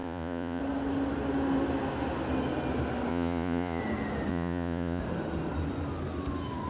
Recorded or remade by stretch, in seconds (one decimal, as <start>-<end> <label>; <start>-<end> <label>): 0.0-0.6 remade; 0.6-3.1 recorded; 3.1-3.8 remade; 3.8-4.3 recorded; 4.3-5.0 remade; 5.0-6.7 recorded